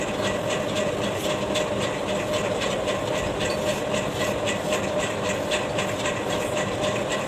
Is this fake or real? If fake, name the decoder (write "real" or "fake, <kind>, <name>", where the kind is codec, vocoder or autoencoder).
fake, vocoder, BigVGAN v2